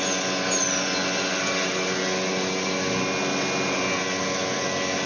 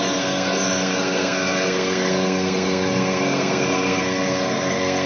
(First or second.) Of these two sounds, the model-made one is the second